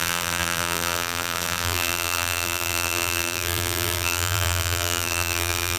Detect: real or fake fake